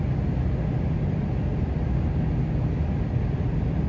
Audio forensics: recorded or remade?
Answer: recorded